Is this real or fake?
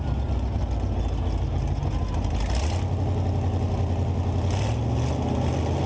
real